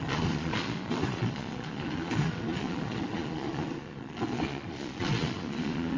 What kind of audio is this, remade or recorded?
remade